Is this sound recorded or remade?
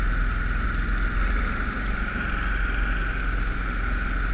recorded